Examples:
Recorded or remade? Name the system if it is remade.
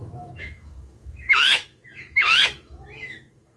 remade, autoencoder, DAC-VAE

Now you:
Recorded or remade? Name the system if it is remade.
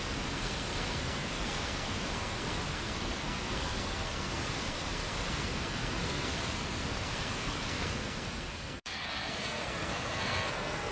remade, codec, SNAC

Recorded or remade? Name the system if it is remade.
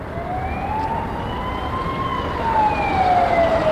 recorded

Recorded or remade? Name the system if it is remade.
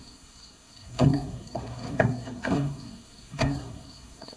remade, codec, SNAC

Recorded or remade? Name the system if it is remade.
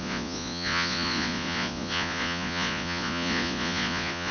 remade, vocoder, Vocos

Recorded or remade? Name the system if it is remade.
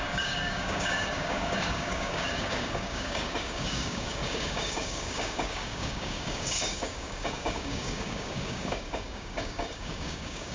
remade, codec, DAC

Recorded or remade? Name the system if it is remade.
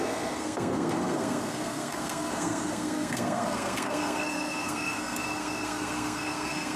remade, codec, SNAC